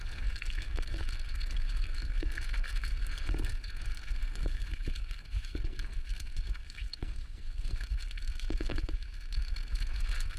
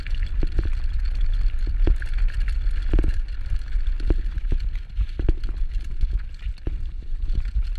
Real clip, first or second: second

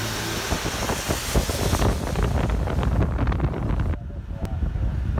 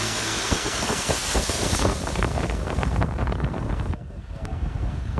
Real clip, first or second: first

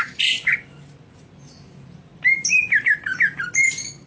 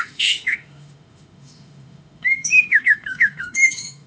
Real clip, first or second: first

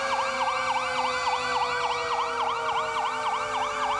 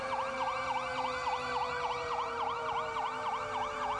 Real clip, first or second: first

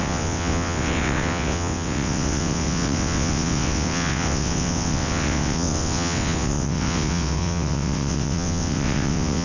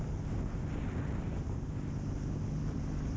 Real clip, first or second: second